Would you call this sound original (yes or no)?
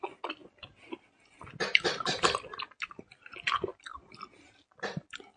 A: yes